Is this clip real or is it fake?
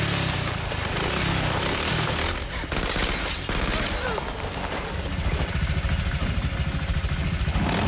real